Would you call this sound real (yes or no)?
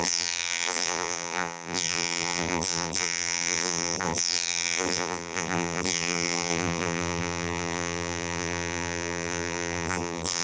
no